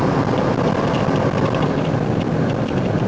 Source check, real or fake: real